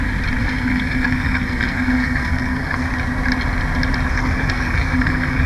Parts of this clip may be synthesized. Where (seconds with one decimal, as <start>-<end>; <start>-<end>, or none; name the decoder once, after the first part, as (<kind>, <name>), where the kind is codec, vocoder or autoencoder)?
0.4-2.9 (codec, SNAC); 4.1-5.5